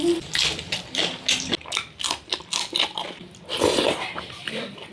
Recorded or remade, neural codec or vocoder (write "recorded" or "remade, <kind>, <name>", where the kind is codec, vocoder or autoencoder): recorded